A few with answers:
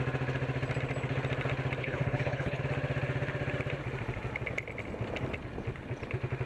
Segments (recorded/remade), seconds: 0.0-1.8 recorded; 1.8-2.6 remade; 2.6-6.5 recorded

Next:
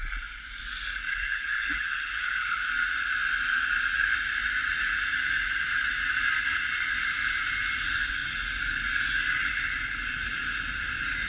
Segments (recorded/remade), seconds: 0.0-1.1 recorded; 1.1-2.7 remade; 2.7-11.3 recorded

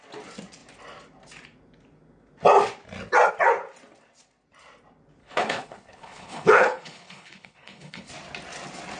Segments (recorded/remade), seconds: 0.0-5.2 recorded; 5.2-8.1 remade; 8.1-9.0 recorded

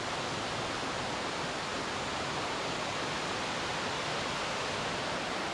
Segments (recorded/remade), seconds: 0.0-5.5 recorded